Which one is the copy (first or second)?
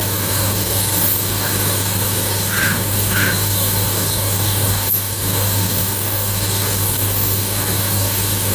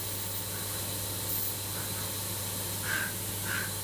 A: first